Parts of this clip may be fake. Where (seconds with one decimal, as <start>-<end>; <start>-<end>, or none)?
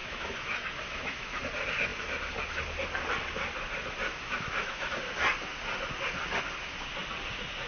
0.0-1.4; 4.1-4.9